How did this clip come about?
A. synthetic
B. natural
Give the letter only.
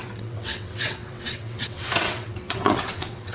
A